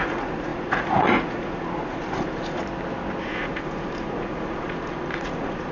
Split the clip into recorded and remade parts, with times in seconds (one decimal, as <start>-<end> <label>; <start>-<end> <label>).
0.0-2.6 remade; 2.6-3.2 recorded; 3.2-5.7 remade